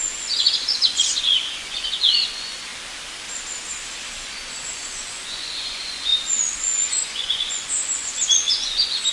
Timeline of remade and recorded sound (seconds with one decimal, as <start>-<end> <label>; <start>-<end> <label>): 0.0-2.7 remade; 2.7-4.2 recorded; 4.2-9.1 remade

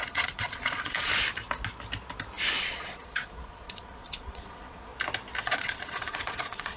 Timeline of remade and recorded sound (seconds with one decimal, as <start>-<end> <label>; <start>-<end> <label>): 0.0-1.1 remade; 1.1-2.6 recorded; 2.6-4.9 remade; 4.9-5.4 recorded; 5.4-6.8 remade

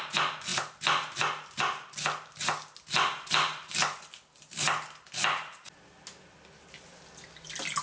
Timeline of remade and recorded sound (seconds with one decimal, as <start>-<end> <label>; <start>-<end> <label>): 0.0-7.8 recorded

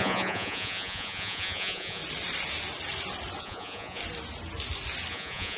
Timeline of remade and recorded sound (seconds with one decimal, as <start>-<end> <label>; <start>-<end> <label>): 0.0-2.0 remade; 2.0-3.4 recorded; 3.4-4.0 remade; 4.0-5.1 recorded; 5.1-5.6 remade

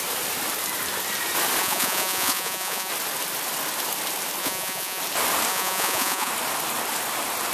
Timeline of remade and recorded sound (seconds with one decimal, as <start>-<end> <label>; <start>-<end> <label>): 0.0-1.6 recorded; 1.6-2.9 remade; 2.9-4.4 recorded; 4.4-5.0 remade; 5.0-5.5 recorded; 5.5-6.3 remade; 6.3-7.5 recorded

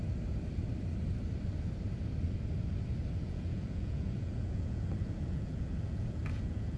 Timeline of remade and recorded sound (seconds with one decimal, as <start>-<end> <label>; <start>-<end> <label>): 0.0-3.2 recorded; 3.2-6.8 remade

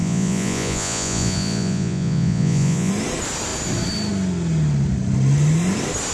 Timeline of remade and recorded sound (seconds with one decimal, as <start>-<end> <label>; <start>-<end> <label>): 0.0-2.9 remade; 2.9-6.1 recorded